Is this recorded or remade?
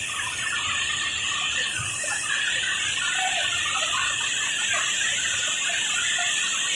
recorded